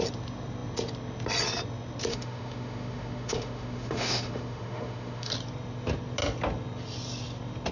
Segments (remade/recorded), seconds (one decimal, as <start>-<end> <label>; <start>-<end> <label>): 0.0-2.1 recorded; 2.1-5.3 remade; 5.3-7.7 recorded